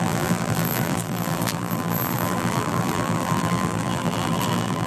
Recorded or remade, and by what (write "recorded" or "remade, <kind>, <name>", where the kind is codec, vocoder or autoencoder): remade, vocoder, BigVGAN v2